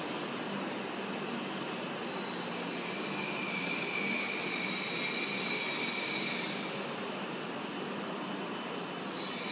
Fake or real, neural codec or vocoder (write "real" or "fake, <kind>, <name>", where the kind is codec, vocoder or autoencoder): real